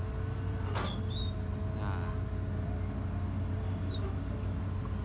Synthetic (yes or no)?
no